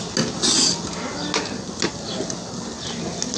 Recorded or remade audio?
recorded